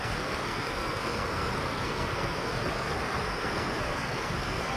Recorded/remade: remade